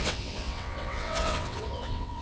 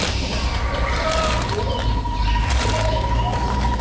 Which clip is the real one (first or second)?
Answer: second